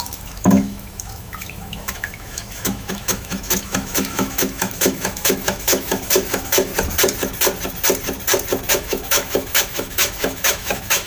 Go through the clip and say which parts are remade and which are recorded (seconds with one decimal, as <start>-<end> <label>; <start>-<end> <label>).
0.0-6.7 remade; 6.7-8.7 recorded; 8.7-11.1 remade

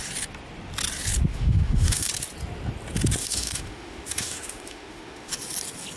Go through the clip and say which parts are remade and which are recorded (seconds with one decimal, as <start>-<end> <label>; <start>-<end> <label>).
0.0-1.3 recorded; 1.3-2.1 remade; 2.1-3.2 recorded; 3.2-5.3 remade; 5.3-6.0 recorded